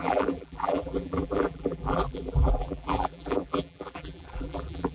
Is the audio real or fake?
fake